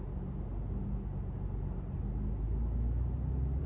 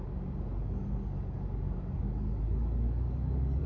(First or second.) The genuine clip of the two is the first